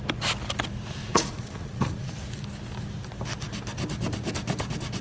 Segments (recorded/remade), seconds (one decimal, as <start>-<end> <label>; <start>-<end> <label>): 0.0-1.0 recorded; 1.0-2.1 remade; 2.1-5.0 recorded

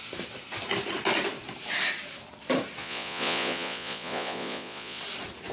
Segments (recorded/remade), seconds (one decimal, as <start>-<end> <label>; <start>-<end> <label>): 0.0-2.8 recorded; 2.8-5.0 remade; 5.0-5.5 recorded